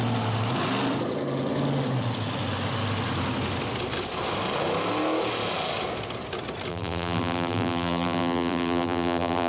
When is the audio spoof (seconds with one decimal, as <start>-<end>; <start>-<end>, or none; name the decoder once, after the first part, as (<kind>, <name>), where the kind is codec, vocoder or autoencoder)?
6.7-9.5 (vocoder, BigVGAN v2)

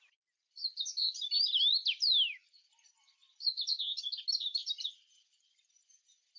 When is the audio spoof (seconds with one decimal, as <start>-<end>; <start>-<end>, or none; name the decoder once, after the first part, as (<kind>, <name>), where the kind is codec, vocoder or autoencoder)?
4.5-5.7 (vocoder, BigVGAN v2)